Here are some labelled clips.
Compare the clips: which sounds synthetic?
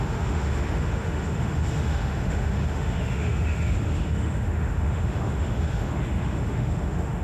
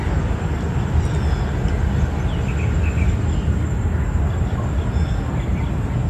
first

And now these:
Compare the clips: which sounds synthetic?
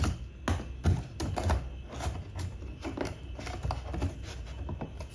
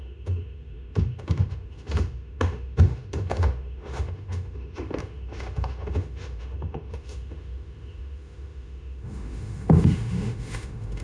second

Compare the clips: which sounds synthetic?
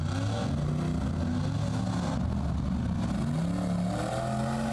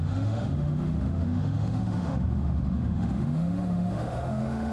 second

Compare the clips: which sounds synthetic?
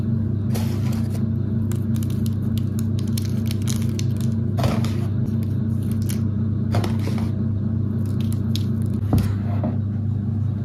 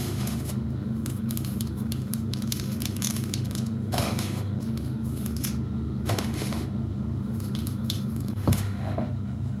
second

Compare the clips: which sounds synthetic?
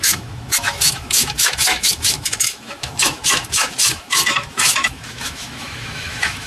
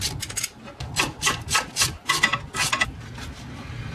first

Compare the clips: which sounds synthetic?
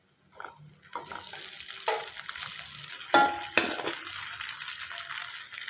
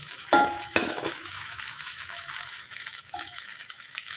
second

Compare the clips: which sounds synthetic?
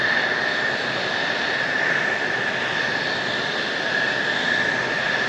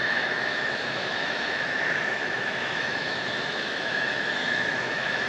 second